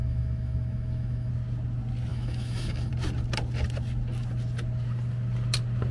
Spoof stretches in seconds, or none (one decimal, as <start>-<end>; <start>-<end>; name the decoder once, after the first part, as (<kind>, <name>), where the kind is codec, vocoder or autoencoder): 0.0-1.3 (autoencoder, DAC-VAE); 2.1-2.9